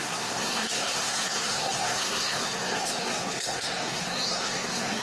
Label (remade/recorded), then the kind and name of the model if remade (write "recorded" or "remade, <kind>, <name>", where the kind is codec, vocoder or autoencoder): remade, codec, SNAC